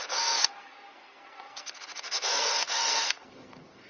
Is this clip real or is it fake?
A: fake